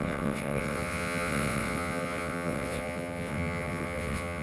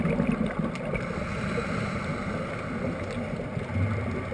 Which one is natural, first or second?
second